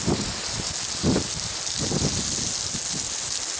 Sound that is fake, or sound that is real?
real